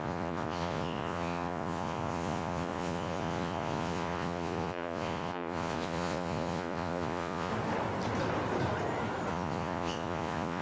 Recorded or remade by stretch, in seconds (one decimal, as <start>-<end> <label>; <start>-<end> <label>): 0.0-7.5 remade; 7.5-9.3 recorded; 9.3-10.6 remade